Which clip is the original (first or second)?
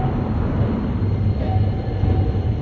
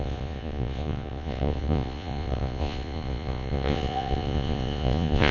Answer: first